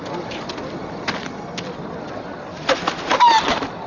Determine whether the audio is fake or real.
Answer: real